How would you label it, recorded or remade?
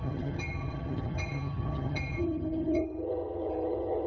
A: remade